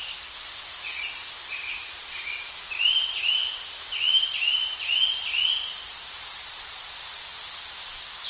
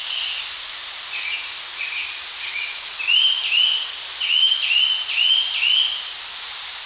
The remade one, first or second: first